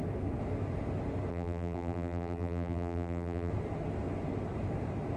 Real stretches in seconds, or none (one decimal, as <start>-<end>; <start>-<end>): 0.0-1.3; 3.5-5.2